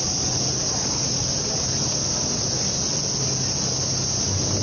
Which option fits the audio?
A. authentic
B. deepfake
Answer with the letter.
A